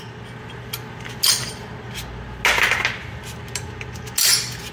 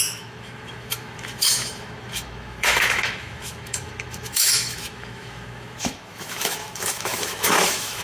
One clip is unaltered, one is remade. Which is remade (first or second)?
second